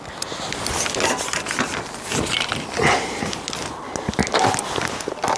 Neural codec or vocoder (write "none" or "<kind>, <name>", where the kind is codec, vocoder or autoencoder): none